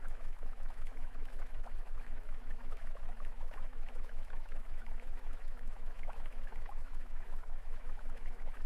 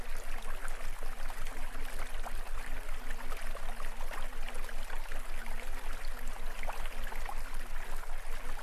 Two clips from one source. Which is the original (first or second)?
second